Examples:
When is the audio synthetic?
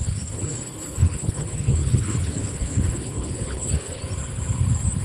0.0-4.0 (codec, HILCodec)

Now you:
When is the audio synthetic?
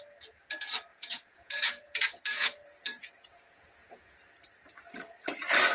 0.9-4.3 (vocoder, Vocos)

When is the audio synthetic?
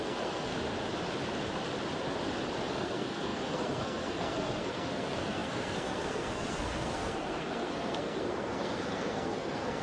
0.0-0.5 (codec, SNAC); 2.6-9.8